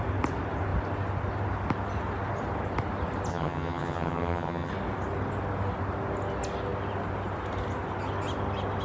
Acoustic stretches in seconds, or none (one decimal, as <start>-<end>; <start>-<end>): 0.0-3.3; 4.7-8.8